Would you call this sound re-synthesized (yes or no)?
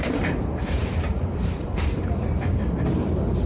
yes